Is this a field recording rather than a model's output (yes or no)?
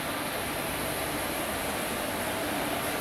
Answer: yes